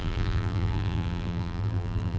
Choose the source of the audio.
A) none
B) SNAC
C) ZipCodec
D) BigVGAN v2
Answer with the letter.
D